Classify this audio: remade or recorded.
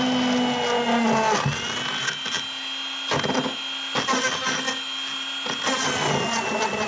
recorded